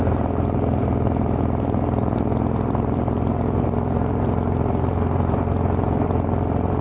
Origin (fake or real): fake